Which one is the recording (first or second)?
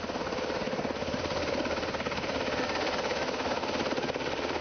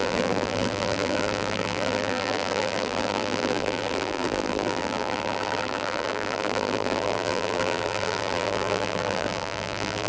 first